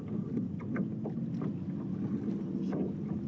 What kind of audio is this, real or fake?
real